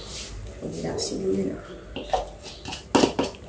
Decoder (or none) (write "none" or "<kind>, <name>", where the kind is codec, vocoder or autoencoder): none